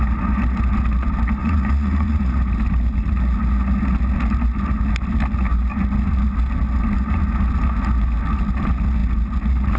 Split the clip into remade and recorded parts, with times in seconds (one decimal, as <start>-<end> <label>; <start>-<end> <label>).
0.0-1.4 recorded; 1.4-2.4 remade; 2.4-9.8 recorded